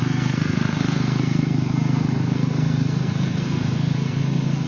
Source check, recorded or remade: remade